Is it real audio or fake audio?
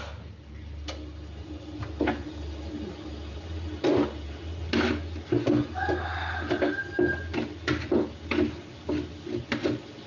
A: real